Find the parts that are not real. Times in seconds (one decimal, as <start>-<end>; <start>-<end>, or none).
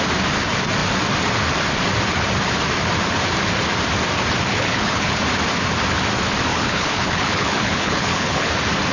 4.5-5.2; 6.5-8.5